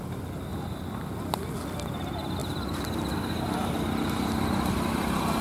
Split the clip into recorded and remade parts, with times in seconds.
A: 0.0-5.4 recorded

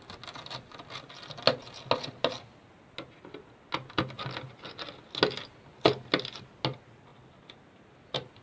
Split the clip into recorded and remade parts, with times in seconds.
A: 0.0-8.4 recorded

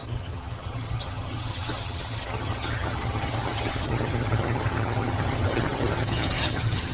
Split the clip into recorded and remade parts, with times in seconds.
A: 0.0-6.9 remade

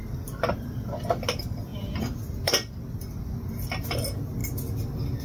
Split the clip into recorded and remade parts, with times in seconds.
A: 0.0-5.2 recorded

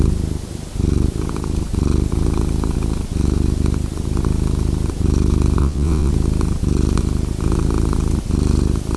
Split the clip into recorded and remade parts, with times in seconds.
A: 0.0-5.6 recorded; 5.6-6.1 remade; 6.1-9.0 recorded

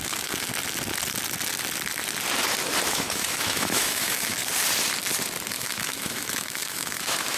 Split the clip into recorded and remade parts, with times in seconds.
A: 0.0-0.5 remade; 0.5-2.9 recorded; 2.9-4.4 remade; 4.4-5.5 recorded; 5.5-7.4 remade

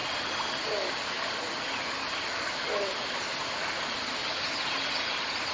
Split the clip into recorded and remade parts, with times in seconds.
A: 0.0-2.9 recorded; 2.9-4.2 remade; 4.2-5.1 recorded; 5.1-5.5 remade

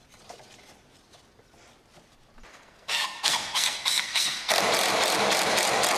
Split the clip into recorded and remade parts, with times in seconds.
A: 0.0-2.5 recorded; 2.5-4.6 remade; 4.6-6.0 recorded